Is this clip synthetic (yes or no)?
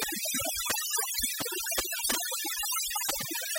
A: no